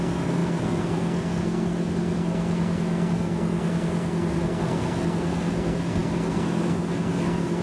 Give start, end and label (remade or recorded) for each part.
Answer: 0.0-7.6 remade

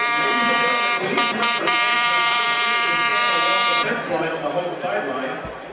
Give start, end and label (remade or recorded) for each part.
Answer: 0.0-5.7 remade